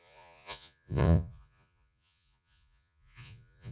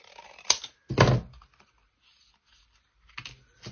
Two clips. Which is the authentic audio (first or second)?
second